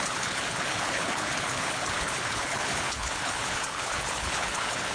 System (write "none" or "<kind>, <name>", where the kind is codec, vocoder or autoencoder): codec, HILCodec